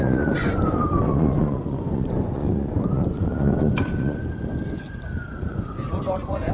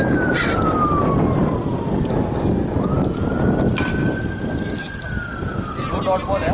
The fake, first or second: first